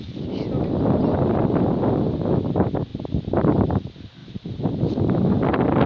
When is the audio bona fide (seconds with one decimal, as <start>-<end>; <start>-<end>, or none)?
0.0-5.9

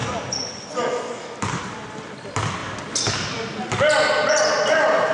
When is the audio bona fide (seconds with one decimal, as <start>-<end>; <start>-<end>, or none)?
0.0-5.1